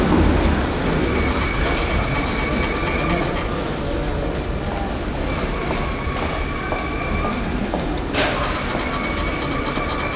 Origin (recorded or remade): recorded